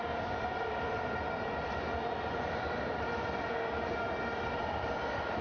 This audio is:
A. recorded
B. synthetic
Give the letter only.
A